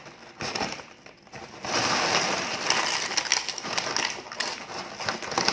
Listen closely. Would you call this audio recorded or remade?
recorded